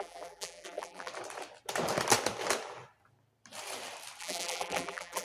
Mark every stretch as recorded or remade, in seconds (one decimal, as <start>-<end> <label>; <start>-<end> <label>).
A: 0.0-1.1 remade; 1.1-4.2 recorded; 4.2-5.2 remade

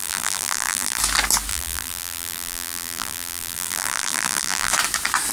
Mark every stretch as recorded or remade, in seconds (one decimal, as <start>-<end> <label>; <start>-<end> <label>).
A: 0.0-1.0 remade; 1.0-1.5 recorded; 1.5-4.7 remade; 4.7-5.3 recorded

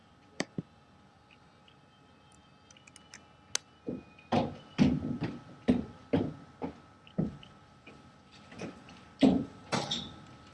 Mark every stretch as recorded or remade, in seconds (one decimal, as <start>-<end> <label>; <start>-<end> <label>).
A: 0.0-2.4 remade; 2.4-7.3 recorded; 7.3-10.5 remade